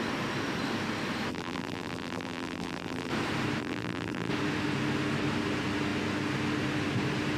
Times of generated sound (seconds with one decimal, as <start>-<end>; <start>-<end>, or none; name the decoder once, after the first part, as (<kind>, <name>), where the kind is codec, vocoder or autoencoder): 1.3-3.1 (vocoder, BigVGAN v2); 3.6-4.3

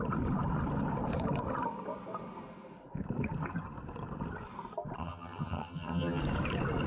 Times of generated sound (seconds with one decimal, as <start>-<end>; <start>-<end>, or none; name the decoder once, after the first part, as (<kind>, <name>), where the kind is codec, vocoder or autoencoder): 5.0-6.2 (vocoder, HiFi-GAN)

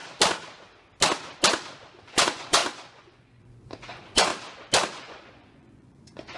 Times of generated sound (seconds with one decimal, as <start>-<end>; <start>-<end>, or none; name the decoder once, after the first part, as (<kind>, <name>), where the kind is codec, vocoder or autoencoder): 2.0-4.3 (vocoder, Vocos); 4.9-6.4

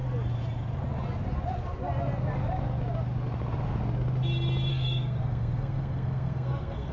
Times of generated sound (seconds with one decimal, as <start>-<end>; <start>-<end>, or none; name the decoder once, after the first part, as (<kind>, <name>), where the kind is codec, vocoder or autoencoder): 4.7-6.9 (codec, SNAC)

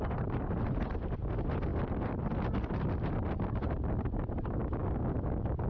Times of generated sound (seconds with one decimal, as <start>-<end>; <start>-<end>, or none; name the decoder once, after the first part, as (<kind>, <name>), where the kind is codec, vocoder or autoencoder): none

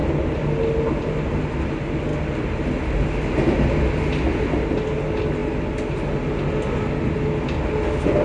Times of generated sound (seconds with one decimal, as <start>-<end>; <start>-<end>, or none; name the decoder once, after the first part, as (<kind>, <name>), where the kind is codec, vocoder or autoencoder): none

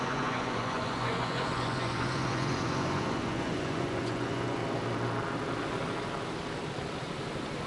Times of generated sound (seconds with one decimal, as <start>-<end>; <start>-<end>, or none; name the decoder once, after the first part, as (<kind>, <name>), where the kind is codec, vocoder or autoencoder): 0.0-4.6 (vocoder, Vocos)